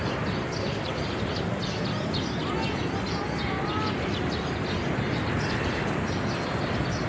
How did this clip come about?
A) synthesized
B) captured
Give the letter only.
B